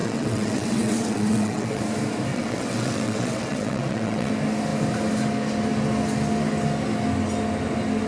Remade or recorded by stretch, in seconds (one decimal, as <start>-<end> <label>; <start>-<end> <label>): 0.0-1.8 remade; 1.8-2.3 recorded; 2.3-4.3 remade; 4.3-8.1 recorded